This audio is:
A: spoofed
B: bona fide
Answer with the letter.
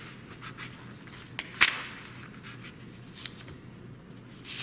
B